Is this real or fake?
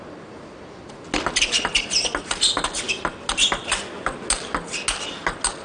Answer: real